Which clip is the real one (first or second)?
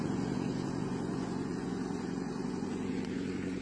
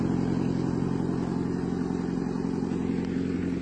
second